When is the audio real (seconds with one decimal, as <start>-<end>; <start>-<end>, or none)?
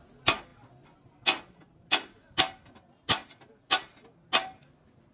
0.0-5.1